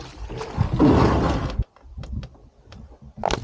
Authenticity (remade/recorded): recorded